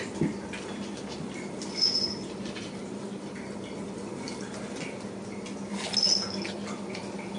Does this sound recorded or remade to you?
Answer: recorded